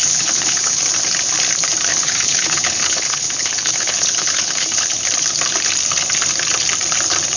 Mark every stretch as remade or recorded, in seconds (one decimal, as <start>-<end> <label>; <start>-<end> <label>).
0.0-0.8 remade; 0.8-1.9 recorded; 1.9-5.1 remade; 5.1-7.4 recorded